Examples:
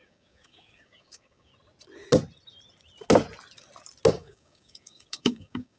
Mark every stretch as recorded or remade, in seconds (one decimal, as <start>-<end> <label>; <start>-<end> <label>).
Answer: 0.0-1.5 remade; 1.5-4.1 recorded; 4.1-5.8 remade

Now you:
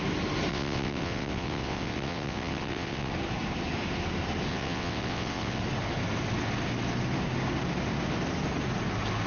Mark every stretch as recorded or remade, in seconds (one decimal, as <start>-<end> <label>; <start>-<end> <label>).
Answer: 0.0-0.5 recorded; 0.5-3.1 remade; 3.1-4.5 recorded; 4.5-5.6 remade; 5.6-9.3 recorded

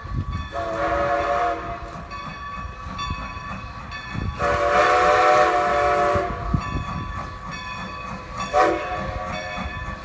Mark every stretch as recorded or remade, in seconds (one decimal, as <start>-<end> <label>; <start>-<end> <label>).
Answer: 0.0-10.0 recorded

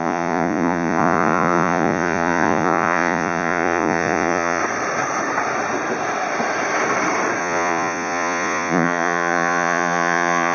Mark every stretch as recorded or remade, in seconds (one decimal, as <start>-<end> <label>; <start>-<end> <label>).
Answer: 0.0-4.6 remade; 4.6-7.4 recorded; 7.4-10.5 remade

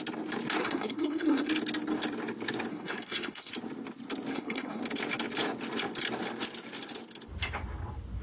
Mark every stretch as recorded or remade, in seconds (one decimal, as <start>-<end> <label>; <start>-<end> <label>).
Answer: 0.0-0.6 recorded; 0.6-1.5 remade; 1.5-2.7 recorded; 2.7-3.5 remade; 3.5-4.3 recorded; 4.3-4.8 remade; 4.8-8.2 recorded

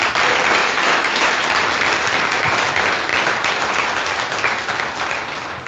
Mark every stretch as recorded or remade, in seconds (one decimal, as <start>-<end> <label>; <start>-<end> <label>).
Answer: 0.0-0.6 recorded; 0.6-1.4 remade; 1.4-5.7 recorded